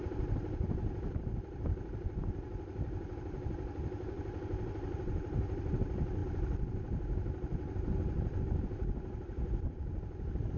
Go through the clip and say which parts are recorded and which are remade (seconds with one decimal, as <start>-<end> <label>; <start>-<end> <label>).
0.0-10.6 recorded